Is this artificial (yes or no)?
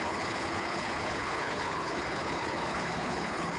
yes